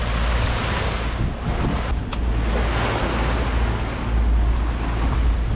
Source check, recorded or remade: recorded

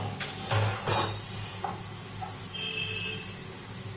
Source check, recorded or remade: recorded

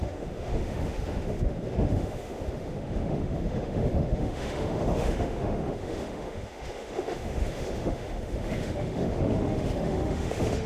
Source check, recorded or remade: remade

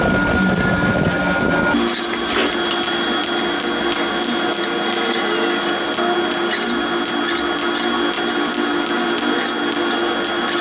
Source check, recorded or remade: recorded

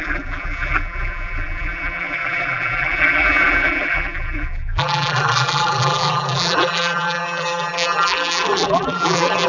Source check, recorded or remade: remade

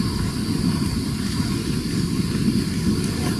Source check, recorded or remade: recorded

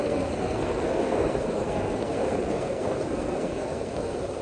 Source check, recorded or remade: remade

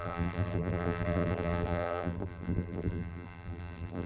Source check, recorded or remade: remade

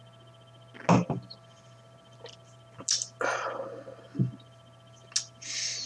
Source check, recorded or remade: recorded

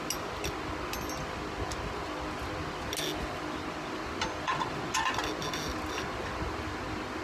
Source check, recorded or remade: recorded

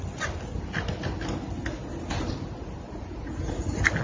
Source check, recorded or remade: recorded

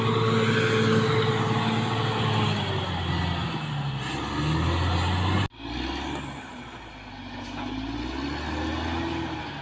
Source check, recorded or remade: recorded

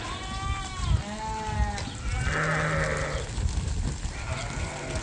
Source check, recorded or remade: recorded